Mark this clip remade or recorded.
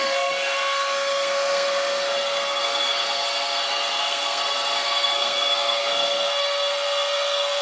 remade